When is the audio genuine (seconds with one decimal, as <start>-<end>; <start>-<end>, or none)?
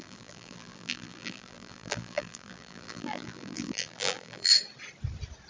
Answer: 4.5-5.5